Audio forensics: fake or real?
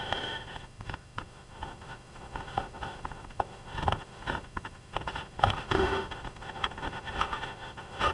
fake